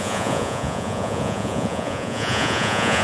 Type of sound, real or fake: fake